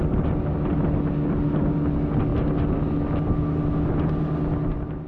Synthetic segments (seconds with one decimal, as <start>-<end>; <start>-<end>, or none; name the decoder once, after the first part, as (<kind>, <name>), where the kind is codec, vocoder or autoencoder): none